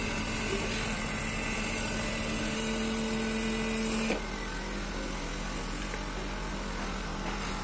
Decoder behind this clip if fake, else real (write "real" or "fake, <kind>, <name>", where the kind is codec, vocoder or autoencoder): real